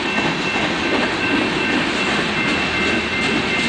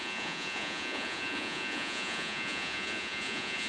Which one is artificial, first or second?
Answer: second